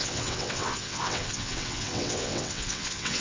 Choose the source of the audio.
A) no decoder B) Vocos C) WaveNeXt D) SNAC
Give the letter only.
C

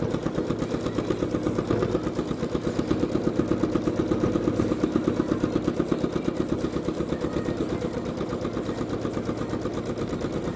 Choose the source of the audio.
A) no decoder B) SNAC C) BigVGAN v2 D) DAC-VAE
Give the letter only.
A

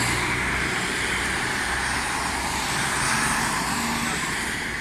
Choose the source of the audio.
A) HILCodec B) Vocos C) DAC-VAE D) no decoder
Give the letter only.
D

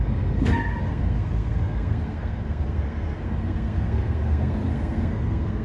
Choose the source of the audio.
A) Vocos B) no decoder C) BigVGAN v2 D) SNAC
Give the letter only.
D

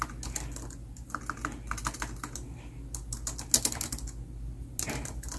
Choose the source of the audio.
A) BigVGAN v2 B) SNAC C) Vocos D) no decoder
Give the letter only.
D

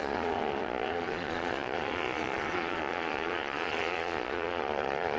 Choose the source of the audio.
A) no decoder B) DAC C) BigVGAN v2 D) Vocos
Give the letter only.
D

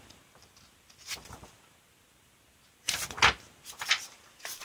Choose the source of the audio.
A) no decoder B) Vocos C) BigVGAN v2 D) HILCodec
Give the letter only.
A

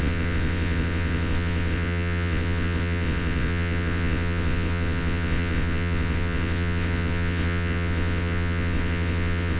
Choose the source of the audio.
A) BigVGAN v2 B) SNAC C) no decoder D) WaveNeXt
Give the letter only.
D